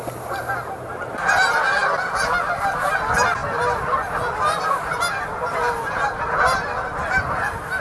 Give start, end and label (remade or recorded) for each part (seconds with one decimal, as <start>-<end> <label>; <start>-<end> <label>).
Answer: 0.0-7.8 recorded